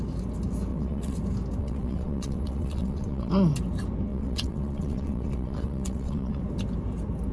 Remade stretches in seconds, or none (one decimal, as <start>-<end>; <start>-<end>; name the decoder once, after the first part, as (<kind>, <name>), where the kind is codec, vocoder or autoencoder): 0.7-1.2 (vocoder, WaveNeXt); 1.6-3.3; 4.1-6.4

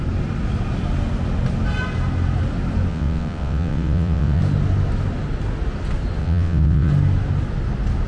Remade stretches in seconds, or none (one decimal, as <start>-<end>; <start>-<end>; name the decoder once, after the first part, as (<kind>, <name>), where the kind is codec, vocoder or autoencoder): 2.9-4.4 (vocoder, WaveNeXt); 6.2-6.9